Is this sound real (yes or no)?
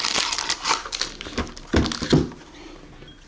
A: yes